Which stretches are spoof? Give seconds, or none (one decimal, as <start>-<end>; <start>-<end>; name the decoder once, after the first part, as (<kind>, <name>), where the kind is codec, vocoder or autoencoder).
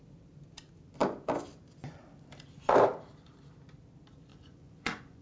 4.3-5.2 (vocoder, Vocos)